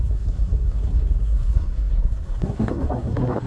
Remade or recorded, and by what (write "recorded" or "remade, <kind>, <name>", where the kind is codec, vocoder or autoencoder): remade, codec, SNAC